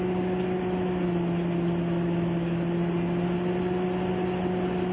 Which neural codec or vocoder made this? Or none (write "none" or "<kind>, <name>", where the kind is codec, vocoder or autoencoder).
none